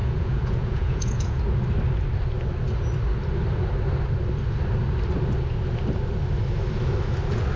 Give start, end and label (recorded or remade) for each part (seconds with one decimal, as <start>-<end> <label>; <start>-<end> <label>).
0.0-1.4 remade; 1.4-7.6 recorded